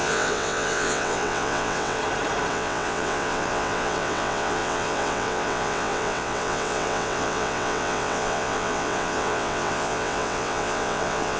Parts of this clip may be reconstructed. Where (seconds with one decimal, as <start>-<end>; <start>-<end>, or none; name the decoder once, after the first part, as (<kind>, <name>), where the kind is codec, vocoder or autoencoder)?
0.0-2.0 (vocoder, WaveNeXt); 2.5-11.4